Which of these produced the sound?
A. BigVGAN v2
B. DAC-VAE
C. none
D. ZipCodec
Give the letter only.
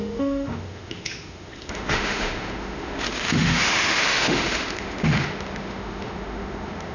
B